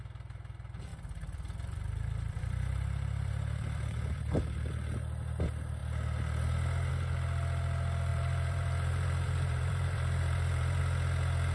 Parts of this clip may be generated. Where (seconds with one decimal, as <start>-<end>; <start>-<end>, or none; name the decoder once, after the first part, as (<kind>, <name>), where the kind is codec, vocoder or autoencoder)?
0.9-3.3 (vocoder, BigVGAN v2); 8.1-10.8